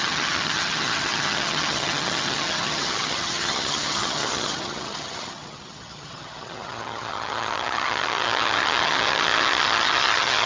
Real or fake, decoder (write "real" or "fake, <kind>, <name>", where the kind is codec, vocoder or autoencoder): fake, vocoder, HiFi-GAN